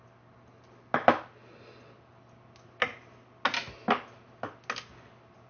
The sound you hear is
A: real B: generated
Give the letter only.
A